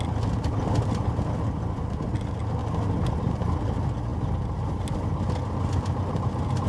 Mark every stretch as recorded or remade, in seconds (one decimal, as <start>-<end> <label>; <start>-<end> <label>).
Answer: 0.0-6.7 recorded